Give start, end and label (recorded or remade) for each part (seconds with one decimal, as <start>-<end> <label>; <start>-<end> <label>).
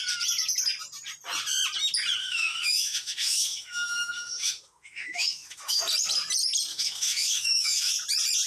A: 0.0-2.2 recorded; 2.2-5.8 remade; 5.8-6.7 recorded; 6.7-7.9 remade; 7.9-8.5 recorded